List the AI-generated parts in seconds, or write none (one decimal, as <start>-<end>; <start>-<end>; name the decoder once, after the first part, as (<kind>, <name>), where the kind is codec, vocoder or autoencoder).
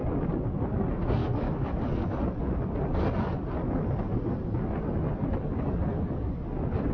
1.2-1.8 (autoencoder, DAC-VAE)